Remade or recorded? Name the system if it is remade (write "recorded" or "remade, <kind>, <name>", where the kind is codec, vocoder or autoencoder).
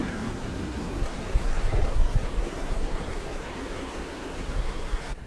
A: remade, codec, SNAC